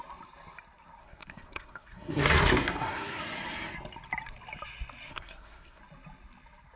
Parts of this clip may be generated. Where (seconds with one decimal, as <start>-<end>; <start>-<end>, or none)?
1.0-3.2; 5.1-5.8